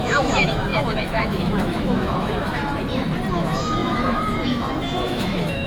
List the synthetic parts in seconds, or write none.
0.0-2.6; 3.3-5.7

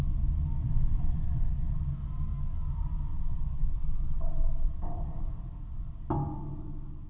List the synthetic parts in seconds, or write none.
0.6-1.8; 3.1-5.9

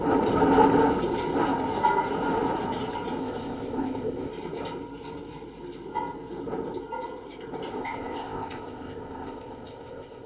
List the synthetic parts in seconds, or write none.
3.2-4.3; 7.8-10.3

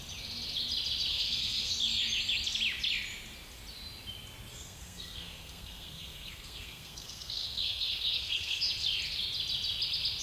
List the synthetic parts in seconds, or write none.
1.1-1.7; 4.5-8.6

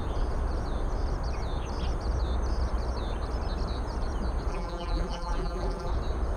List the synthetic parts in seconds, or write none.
4.5-5.9

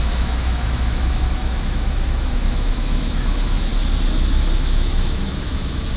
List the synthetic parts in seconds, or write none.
0.0-3.7; 4.3-6.0

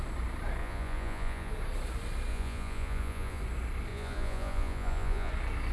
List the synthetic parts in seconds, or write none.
0.6-1.5; 2.3-3.4; 3.9-5.3